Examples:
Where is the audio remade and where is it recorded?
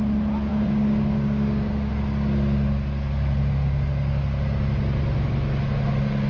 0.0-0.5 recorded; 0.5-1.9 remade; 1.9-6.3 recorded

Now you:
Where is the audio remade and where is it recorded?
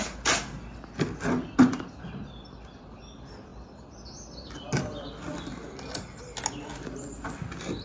0.0-7.8 recorded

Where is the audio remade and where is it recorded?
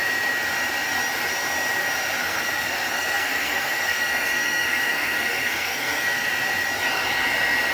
0.0-2.2 recorded; 2.2-6.3 remade; 6.3-7.7 recorded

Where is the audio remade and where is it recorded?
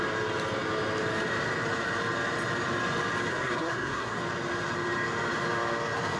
0.0-3.3 recorded; 3.3-4.2 remade; 4.2-6.2 recorded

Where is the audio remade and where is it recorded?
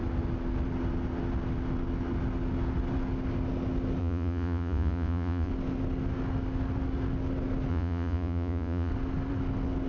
0.0-4.0 recorded; 4.0-5.5 remade; 5.5-7.7 recorded; 7.7-8.9 remade; 8.9-9.9 recorded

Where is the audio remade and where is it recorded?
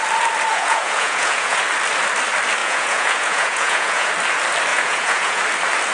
0.0-0.5 recorded; 0.5-1.6 remade; 1.6-2.6 recorded; 2.6-4.1 remade; 4.1-4.7 recorded; 4.7-5.4 remade; 5.4-5.9 recorded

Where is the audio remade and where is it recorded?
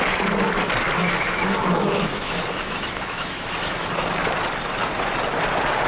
0.0-1.0 recorded; 1.0-3.9 remade; 3.9-5.9 recorded